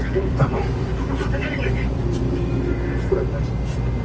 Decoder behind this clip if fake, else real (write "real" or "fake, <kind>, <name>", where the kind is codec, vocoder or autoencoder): fake, vocoder, BigVGAN v2